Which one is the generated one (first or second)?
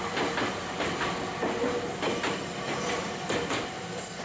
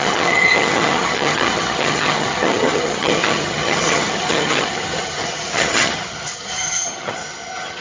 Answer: second